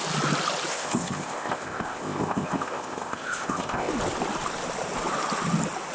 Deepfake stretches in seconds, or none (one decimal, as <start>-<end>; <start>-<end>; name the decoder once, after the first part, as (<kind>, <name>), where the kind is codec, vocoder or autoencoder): 0.7-3.9 (codec, ZipCodec)